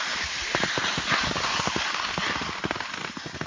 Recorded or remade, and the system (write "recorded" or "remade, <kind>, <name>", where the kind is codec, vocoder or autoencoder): recorded